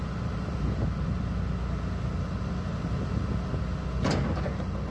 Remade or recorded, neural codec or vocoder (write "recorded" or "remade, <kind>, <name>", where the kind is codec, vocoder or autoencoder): recorded